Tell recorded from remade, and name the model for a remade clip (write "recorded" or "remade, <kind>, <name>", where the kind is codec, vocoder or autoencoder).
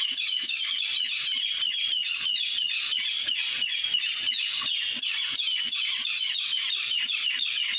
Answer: remade, vocoder, Vocos